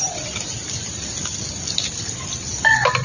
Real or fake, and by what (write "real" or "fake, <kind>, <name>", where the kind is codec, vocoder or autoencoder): real